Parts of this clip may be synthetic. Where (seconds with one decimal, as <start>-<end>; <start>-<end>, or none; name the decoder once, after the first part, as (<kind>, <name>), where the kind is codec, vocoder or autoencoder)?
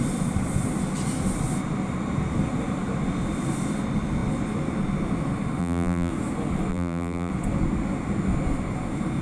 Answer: 5.6-6.1 (vocoder, BigVGAN v2); 6.7-7.3